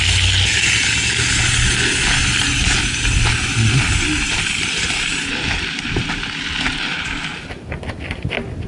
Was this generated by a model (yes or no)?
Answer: no